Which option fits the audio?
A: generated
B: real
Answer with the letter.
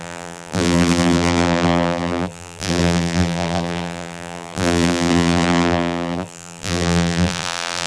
A